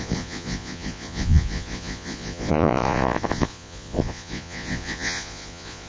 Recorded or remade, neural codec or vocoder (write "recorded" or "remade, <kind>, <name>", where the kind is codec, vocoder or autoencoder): remade, vocoder, Vocos